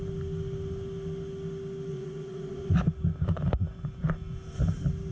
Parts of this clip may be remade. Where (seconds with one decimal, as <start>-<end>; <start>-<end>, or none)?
1.9-2.7